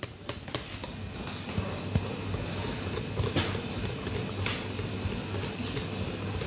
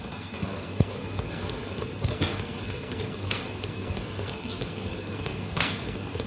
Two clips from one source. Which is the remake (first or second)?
second